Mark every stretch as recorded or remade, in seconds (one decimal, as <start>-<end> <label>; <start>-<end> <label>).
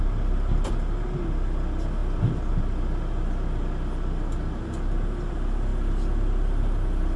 0.0-7.2 recorded